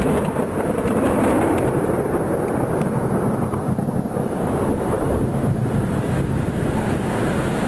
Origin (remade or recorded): remade